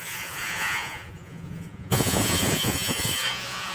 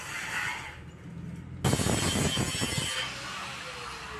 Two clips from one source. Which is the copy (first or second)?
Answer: first